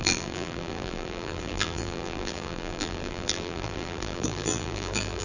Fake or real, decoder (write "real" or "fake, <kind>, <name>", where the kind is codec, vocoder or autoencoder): fake, vocoder, BigVGAN v2